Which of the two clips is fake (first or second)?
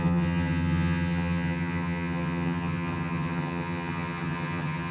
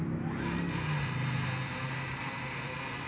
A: first